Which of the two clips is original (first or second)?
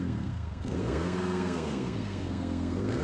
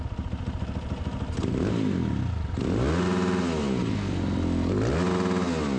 second